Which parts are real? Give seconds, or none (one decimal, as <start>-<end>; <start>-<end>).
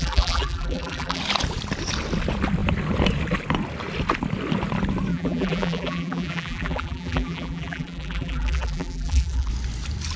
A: 1.2-5.1; 9.5-10.2